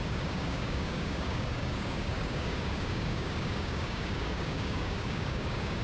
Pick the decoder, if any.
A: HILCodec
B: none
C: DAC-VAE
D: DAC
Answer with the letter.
D